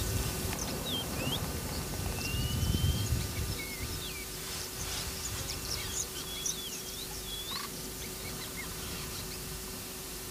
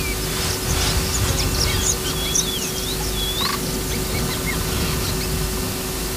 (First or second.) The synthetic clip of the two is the first